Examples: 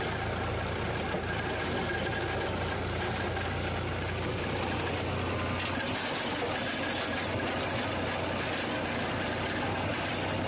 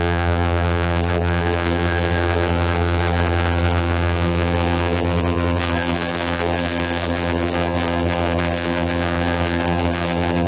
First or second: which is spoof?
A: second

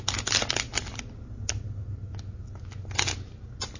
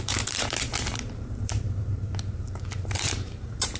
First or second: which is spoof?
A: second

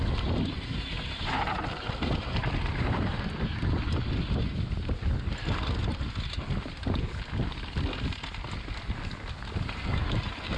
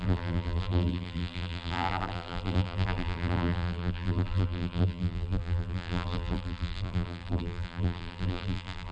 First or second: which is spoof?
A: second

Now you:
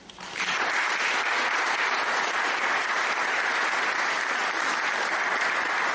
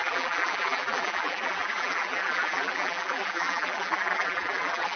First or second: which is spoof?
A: second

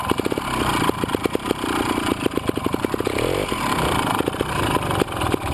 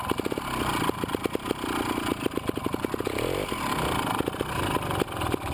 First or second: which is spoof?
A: first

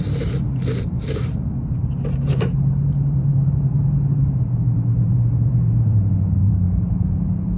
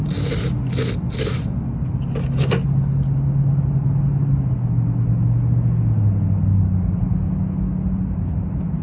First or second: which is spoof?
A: first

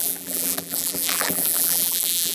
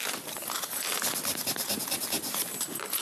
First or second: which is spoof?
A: first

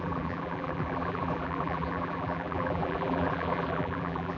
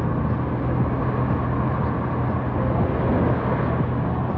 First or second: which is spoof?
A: first